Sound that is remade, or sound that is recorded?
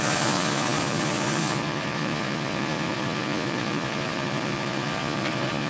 remade